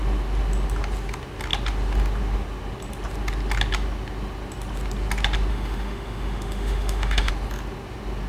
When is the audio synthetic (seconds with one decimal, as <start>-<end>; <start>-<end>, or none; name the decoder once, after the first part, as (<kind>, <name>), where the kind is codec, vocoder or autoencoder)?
5.5-7.3 (autoencoder, DAC-VAE)